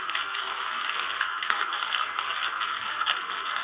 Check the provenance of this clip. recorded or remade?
remade